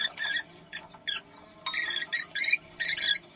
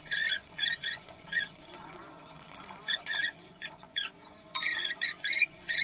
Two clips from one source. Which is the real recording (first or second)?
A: first